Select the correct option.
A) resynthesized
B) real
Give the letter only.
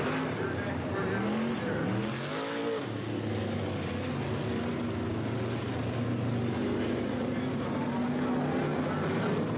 B